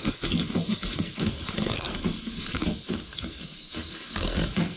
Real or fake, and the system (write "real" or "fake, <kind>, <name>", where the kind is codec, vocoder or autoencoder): fake, codec, SNAC